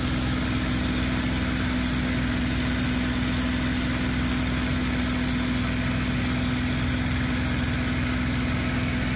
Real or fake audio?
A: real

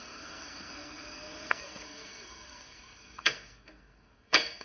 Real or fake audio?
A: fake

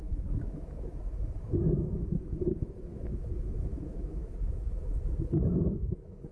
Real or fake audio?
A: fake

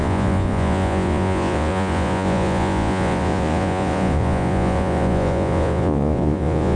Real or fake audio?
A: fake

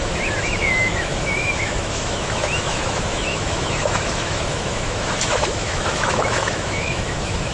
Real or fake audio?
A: fake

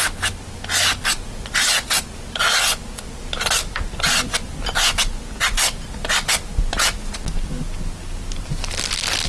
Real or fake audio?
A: real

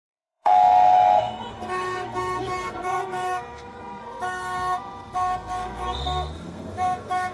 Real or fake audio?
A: fake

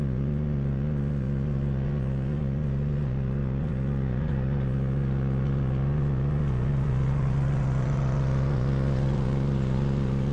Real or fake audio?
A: fake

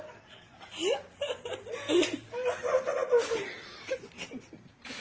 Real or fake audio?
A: real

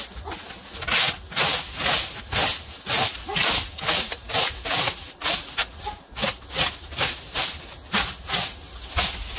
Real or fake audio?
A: real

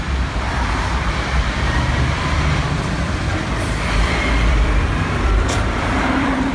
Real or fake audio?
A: fake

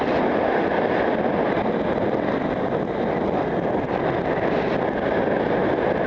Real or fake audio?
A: real